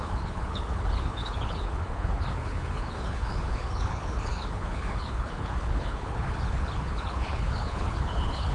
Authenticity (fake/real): fake